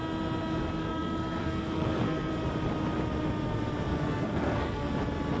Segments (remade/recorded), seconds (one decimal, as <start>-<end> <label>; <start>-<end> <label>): 0.0-0.8 recorded; 0.8-2.3 remade; 2.3-3.9 recorded; 3.9-4.9 remade; 4.9-5.4 recorded